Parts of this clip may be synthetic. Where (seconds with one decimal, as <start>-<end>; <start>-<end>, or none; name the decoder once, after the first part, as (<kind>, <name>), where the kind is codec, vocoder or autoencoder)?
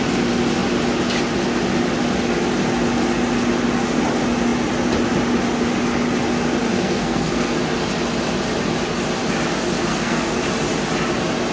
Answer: 6.7-7.6 (codec, SNAC); 9.9-10.4